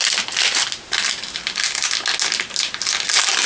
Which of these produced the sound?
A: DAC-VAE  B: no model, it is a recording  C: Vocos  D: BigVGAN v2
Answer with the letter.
B